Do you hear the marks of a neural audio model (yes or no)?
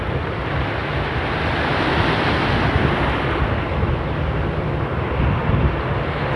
no